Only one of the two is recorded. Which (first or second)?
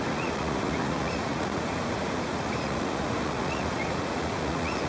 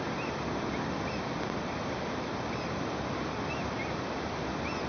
second